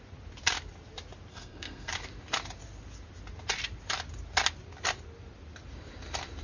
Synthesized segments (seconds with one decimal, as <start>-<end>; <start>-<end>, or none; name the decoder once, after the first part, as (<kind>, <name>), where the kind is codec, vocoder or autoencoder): 1.3-1.9 (codec, SNAC)